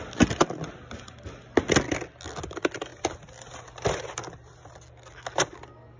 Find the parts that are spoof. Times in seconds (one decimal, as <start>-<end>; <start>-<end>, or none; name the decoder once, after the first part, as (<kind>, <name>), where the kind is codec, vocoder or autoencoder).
none